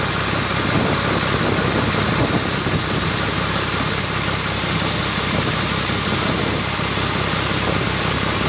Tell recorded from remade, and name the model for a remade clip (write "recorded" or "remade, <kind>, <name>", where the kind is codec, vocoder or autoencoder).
recorded